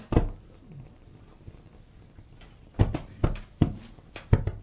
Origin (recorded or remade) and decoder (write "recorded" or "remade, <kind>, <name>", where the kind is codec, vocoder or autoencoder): recorded